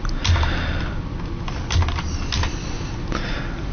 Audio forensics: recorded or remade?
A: recorded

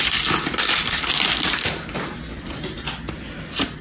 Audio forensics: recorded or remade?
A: recorded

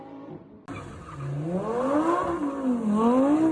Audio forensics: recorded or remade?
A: recorded